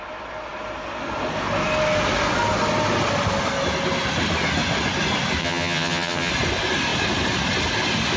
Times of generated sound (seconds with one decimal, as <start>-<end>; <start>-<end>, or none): 5.4-6.3